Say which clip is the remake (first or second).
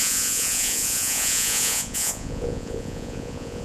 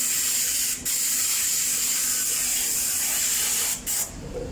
first